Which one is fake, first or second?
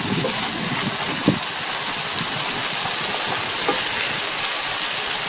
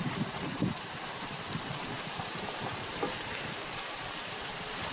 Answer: second